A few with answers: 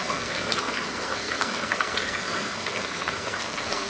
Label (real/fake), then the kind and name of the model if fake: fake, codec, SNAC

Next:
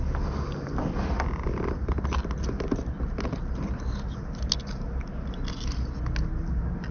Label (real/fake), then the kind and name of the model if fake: real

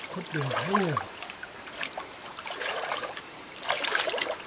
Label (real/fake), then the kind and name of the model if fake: fake, vocoder, BigVGAN v2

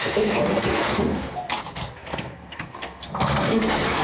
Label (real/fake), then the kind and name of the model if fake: fake, codec, SNAC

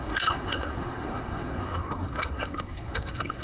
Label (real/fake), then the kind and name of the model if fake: fake, codec, SNAC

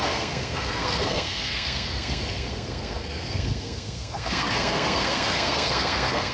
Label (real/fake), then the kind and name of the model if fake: fake, codec, SNAC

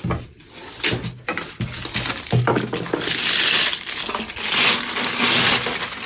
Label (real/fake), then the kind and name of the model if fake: real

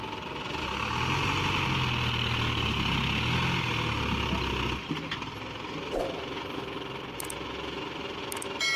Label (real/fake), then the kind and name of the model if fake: real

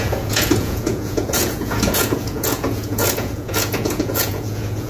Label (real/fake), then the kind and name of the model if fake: fake, vocoder, Vocos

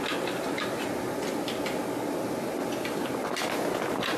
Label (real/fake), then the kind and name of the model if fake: real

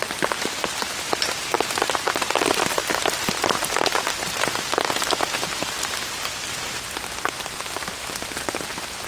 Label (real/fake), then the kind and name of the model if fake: real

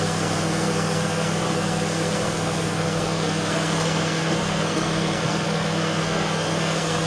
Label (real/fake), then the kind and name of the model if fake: fake, codec, SNAC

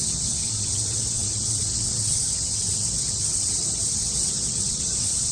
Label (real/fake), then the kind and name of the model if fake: fake, vocoder, WaveNeXt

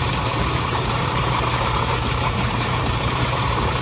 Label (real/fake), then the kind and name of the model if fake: fake, vocoder, BigVGAN v2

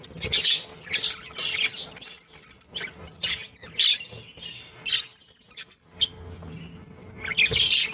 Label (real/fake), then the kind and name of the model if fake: real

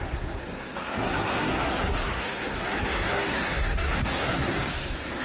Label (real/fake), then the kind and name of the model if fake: fake, codec, SNAC